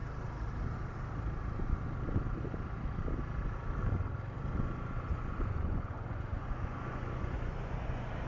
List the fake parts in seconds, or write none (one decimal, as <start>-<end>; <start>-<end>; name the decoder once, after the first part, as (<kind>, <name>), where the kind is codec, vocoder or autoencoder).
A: 4.6-8.3 (vocoder, Vocos)